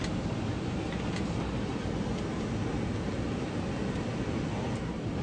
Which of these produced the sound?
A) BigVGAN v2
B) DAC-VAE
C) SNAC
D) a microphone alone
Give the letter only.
D